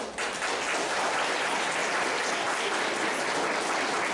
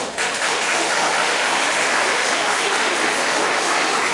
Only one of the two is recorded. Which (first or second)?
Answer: first